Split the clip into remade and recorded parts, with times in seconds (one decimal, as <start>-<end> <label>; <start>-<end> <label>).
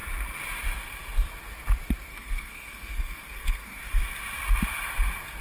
0.0-2.1 recorded; 2.1-3.8 remade; 3.8-5.4 recorded